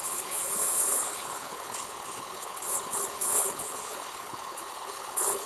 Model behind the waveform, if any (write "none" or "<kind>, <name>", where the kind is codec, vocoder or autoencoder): codec, HILCodec